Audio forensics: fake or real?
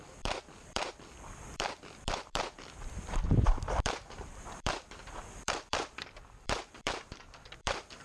fake